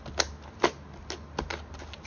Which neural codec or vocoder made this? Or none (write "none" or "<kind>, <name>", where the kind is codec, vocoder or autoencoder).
none